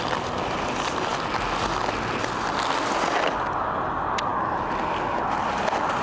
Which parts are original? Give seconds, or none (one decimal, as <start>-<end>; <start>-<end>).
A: 0.0-6.0